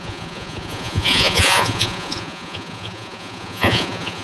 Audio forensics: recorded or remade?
remade